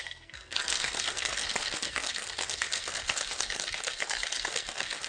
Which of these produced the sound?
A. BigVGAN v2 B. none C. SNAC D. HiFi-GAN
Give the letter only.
C